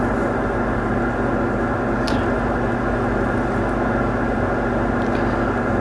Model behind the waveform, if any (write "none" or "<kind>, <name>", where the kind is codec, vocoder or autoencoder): none